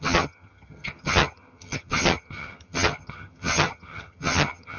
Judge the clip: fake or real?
fake